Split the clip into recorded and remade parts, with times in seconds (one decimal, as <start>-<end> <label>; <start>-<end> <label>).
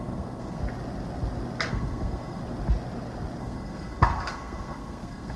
0.0-0.6 remade; 0.6-1.7 recorded; 1.7-2.4 remade; 2.4-3.4 recorded; 3.4-5.4 remade